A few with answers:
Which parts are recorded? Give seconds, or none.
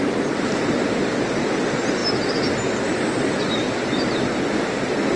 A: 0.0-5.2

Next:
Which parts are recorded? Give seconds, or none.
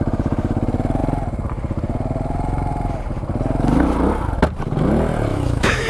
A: 0.0-5.3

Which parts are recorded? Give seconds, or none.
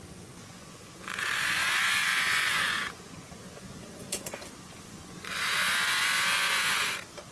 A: none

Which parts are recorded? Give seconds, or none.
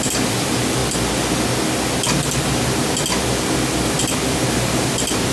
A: 0.8-4.0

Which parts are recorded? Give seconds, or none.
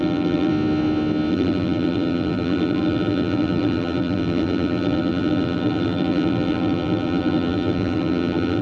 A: 0.5-1.3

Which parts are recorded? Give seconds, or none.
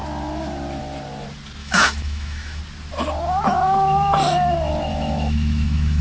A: 0.0-1.6; 2.6-4.9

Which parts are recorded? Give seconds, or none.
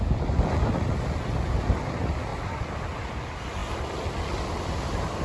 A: 0.0-5.2